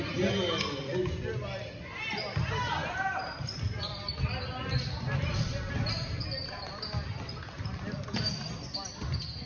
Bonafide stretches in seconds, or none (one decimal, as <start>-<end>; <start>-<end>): 0.0-9.5